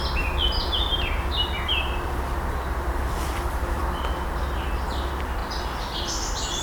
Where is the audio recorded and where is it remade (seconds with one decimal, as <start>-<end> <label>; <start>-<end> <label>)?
0.0-6.6 recorded